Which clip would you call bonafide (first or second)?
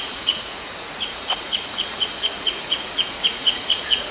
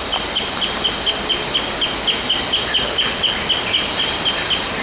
second